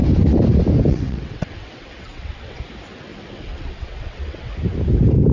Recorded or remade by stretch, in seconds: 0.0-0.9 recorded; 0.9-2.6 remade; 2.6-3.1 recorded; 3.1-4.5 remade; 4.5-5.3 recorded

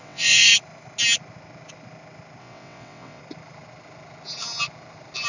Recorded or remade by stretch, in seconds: 0.0-0.5 remade; 0.5-2.4 recorded; 2.4-3.2 remade; 3.2-5.3 recorded

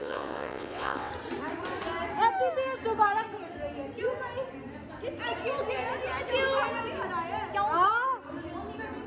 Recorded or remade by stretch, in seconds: 0.0-1.1 remade; 1.1-9.1 recorded

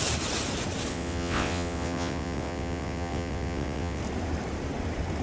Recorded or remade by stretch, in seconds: 0.0-0.9 recorded; 0.9-4.0 remade; 4.0-5.2 recorded

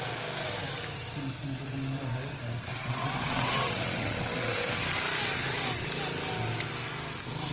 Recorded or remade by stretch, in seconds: 0.0-2.7 recorded; 2.7-4.8 remade; 4.8-7.5 recorded